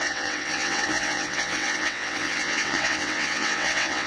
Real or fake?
fake